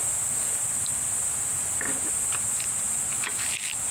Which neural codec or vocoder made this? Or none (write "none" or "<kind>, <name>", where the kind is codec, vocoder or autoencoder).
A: none